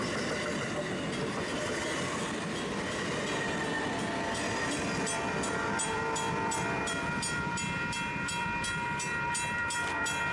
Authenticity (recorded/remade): remade